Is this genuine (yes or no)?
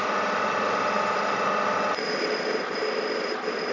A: yes